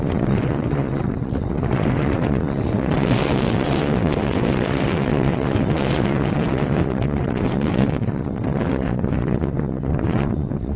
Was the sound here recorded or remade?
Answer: remade